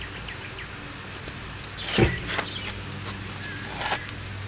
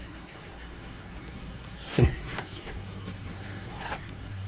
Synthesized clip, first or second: second